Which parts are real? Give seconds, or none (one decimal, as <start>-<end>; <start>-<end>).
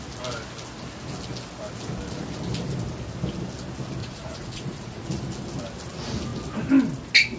0.0-4.0; 5.2-7.4